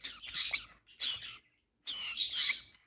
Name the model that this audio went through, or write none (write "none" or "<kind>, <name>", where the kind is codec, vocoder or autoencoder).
none